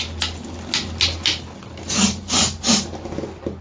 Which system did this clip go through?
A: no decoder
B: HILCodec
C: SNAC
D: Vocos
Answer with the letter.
A